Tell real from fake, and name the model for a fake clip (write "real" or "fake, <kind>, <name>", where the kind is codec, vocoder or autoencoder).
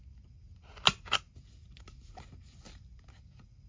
real